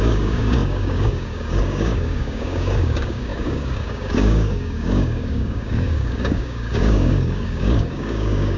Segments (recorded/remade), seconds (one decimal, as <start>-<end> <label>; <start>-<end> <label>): 0.0-8.6 remade